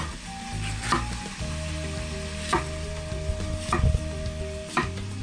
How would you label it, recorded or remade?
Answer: recorded